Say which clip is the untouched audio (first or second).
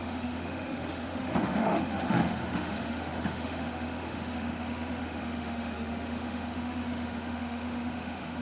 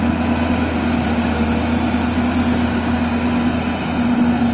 second